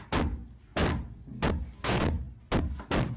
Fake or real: real